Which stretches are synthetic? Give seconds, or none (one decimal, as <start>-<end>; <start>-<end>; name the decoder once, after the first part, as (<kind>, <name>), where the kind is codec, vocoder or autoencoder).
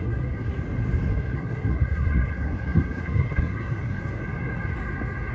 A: 0.0-0.5 (codec, SNAC); 1.1-4.2